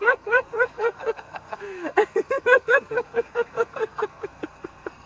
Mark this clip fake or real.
fake